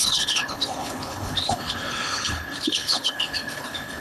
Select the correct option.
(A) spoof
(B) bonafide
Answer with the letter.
A